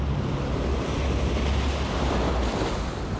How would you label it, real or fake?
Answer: real